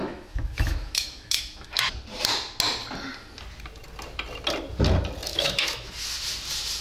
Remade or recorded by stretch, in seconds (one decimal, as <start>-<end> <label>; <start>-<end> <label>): 0.0-1.8 remade; 1.8-5.3 recorded; 5.3-5.9 remade; 5.9-6.8 recorded